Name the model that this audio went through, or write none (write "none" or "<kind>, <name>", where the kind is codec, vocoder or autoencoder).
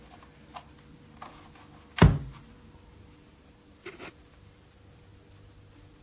none